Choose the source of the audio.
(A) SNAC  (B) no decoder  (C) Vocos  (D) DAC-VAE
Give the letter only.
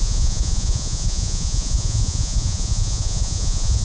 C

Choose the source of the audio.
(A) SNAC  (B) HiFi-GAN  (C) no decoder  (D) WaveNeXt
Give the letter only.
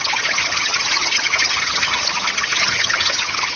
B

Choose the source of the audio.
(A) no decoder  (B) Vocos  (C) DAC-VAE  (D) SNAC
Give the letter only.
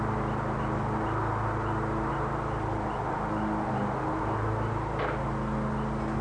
A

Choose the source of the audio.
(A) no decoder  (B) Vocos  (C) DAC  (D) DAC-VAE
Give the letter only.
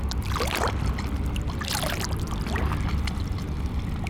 A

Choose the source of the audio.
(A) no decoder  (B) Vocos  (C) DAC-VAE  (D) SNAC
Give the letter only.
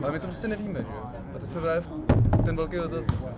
A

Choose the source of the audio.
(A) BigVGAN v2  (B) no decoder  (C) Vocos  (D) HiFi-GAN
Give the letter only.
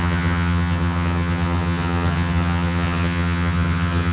D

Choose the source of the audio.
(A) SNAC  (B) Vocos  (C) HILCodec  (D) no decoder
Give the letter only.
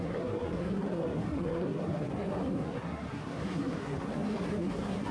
A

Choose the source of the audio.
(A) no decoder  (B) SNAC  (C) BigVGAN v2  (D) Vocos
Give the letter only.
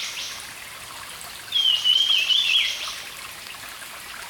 A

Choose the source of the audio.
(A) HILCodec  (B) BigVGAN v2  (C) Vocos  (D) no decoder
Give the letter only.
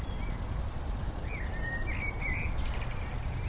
D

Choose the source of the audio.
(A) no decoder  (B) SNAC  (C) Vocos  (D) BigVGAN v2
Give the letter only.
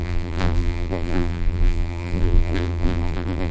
D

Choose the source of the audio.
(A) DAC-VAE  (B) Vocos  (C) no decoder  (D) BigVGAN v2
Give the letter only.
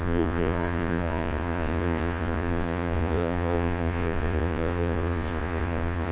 B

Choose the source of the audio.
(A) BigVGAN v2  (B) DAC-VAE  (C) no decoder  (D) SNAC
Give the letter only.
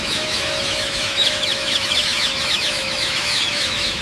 B